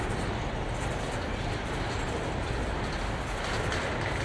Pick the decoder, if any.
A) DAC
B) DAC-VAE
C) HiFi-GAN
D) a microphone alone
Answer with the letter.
D